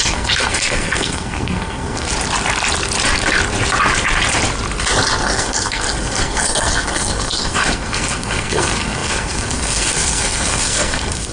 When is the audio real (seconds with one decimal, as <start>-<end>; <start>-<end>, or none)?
2.1-5.2